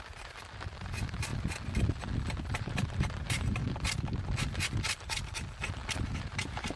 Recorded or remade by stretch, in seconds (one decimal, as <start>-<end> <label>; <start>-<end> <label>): 0.0-1.3 remade; 1.3-2.6 recorded; 2.6-3.6 remade; 3.6-6.2 recorded; 6.2-6.8 remade